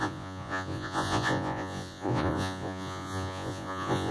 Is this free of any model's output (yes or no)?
no